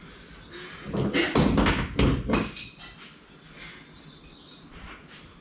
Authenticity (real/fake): real